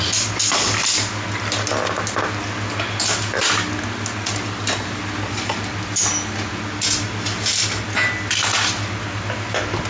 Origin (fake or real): real